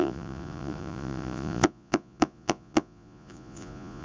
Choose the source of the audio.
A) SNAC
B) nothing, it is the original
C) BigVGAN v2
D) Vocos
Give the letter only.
D